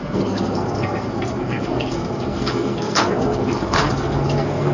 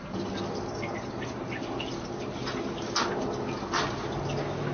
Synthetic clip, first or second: first